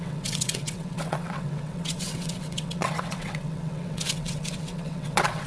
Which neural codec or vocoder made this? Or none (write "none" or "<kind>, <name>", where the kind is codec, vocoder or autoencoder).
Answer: vocoder, WaveNeXt